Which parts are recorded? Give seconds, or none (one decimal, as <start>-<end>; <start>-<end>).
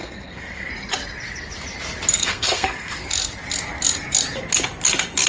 0.7-2.2; 3.1-5.3